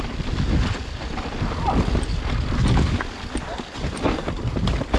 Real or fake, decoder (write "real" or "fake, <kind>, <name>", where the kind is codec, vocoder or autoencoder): real